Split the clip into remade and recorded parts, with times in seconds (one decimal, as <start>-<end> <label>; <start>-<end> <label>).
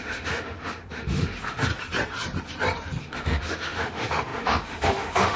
0.0-1.7 remade; 1.7-3.0 recorded; 3.0-5.4 remade